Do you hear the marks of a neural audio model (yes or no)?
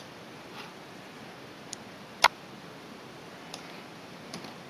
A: yes